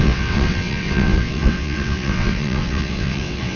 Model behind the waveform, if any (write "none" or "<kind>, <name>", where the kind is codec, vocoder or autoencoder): vocoder, WaveNeXt